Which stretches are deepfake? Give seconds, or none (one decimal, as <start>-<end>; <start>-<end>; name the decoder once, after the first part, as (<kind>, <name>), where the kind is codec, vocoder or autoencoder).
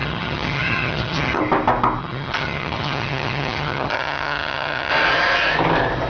0.0-1.4 (vocoder, HiFi-GAN); 2.0-4.9